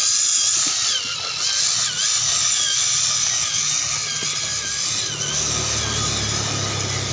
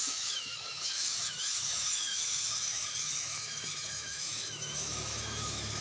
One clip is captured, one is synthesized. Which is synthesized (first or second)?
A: second